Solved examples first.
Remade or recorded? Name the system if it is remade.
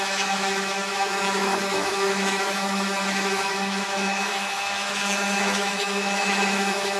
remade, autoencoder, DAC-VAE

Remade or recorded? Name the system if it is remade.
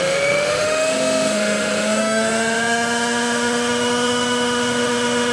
remade, autoencoder, DAC-VAE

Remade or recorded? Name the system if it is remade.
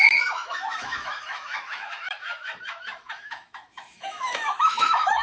remade, autoencoder, DAC-VAE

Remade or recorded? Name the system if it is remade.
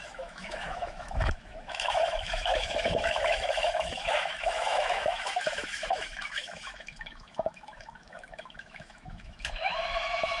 remade, autoencoder, DAC-VAE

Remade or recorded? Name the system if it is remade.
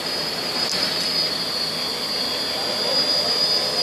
recorded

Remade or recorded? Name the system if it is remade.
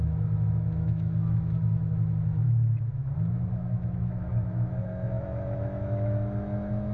remade, autoencoder, DAC-VAE